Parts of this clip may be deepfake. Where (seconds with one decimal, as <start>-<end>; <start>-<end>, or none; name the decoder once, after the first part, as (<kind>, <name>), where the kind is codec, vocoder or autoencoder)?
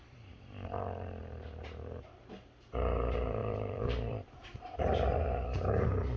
3.4-5.2 (vocoder, BigVGAN v2)